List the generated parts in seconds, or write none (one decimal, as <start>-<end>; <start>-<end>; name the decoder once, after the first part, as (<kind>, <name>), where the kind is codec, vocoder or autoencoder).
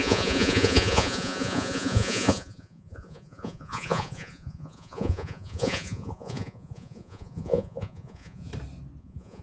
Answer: 0.0-8.5 (vocoder, Vocos); 9.0-9.4